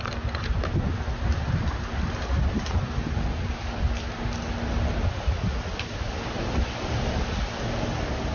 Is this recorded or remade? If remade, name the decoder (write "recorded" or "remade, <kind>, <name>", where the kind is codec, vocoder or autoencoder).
recorded